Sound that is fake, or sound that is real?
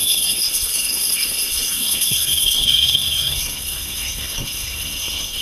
fake